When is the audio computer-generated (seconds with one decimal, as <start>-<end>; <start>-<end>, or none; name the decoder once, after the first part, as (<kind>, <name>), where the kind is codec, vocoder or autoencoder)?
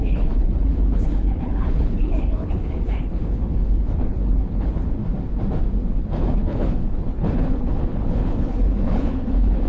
0.0-5.0 (codec, HILCodec); 5.8-9.7